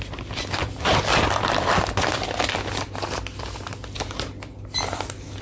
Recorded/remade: recorded